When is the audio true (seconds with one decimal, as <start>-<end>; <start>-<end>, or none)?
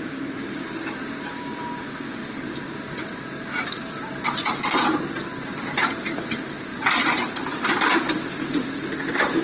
none